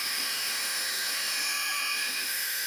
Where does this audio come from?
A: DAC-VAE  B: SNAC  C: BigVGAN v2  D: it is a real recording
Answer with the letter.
A